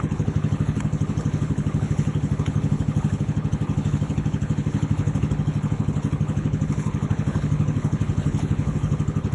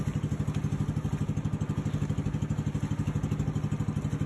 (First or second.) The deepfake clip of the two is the first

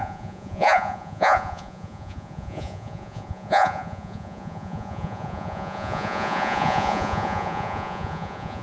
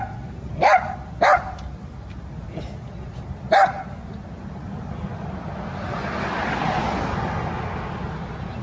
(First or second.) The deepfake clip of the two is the first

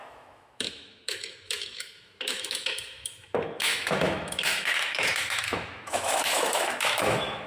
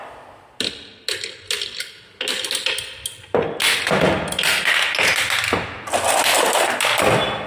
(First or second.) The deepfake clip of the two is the first